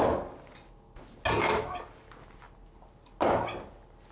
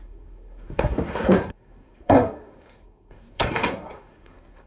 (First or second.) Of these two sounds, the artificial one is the second